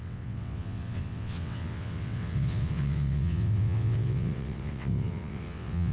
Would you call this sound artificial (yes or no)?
yes